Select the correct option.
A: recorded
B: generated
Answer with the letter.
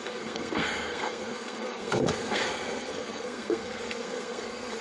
B